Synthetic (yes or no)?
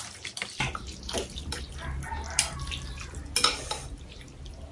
no